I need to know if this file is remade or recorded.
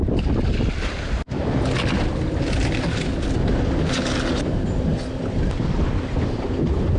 recorded